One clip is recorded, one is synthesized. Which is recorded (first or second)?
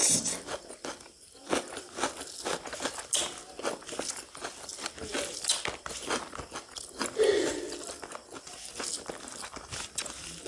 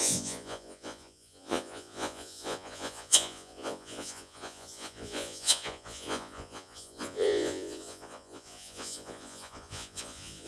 first